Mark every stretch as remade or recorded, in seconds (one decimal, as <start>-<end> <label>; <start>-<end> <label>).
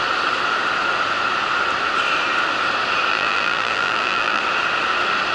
0.0-3.1 recorded; 3.1-4.4 remade; 4.4-5.3 recorded